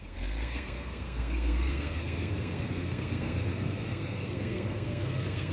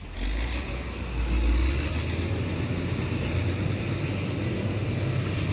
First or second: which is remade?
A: first